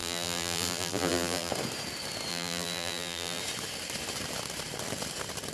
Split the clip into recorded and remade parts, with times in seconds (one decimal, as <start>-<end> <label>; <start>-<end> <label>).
0.0-1.5 remade; 1.5-2.3 recorded; 2.3-3.4 remade; 3.4-5.5 recorded